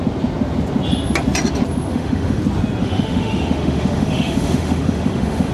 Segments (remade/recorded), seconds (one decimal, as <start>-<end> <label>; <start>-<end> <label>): 0.0-1.9 recorded; 1.9-2.4 remade; 2.4-2.8 recorded; 2.8-5.5 remade